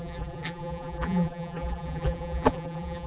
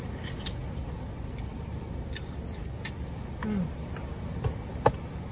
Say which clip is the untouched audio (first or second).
second